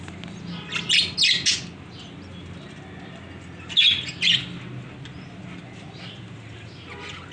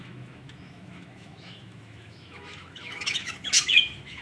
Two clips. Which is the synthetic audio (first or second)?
second